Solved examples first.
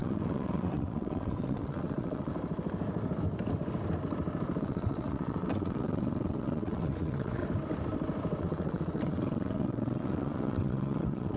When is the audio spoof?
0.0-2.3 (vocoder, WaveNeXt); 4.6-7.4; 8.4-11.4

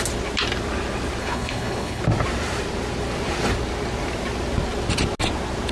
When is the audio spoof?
1.2-2.0 (codec, HILCodec)

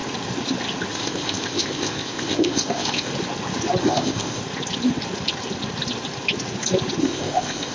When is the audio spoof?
0.9-3.1 (codec, ZipCodec); 3.8-4.4; 7.0-7.7

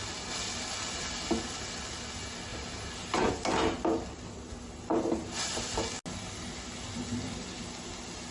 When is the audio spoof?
2.5-3.3 (vocoder, BigVGAN v2); 4.9-5.6

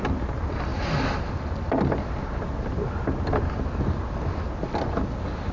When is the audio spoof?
none

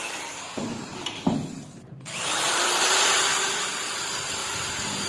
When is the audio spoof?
0.0-5.1 (vocoder, BigVGAN v2)